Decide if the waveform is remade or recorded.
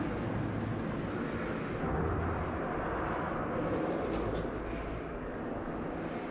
recorded